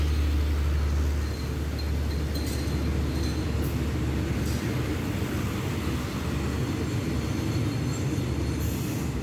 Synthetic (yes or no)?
no